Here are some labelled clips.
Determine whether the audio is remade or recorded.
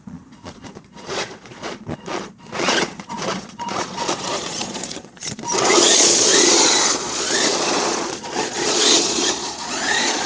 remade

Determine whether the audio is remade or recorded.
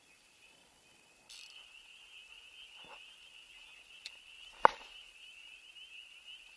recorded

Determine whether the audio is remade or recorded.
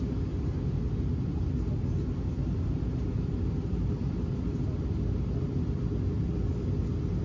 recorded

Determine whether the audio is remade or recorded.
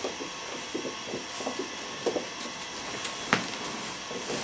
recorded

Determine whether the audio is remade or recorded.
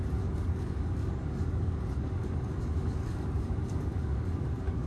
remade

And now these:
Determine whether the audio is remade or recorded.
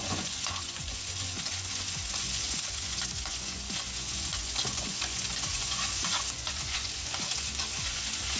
remade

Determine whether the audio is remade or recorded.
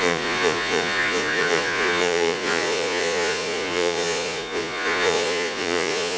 remade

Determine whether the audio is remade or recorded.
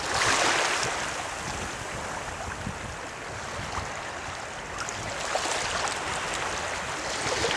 recorded